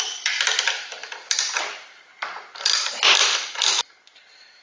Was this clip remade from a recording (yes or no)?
no